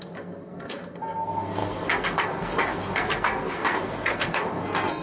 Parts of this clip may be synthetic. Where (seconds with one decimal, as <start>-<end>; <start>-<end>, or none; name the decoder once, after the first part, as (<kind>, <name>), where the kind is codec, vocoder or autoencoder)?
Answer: 0.0-5.0 (codec, SNAC)